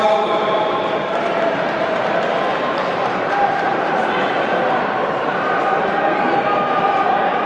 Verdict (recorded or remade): remade